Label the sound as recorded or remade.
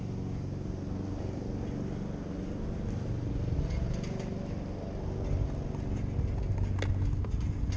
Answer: recorded